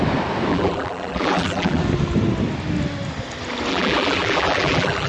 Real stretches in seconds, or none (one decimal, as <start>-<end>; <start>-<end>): 0.0-0.5; 1.8-3.7